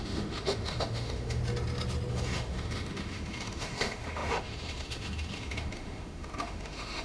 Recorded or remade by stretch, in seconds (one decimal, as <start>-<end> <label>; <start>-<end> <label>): 0.0-1.4 remade; 1.4-2.1 recorded; 2.1-7.0 remade